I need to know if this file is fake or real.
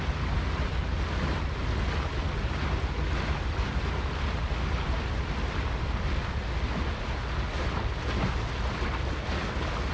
real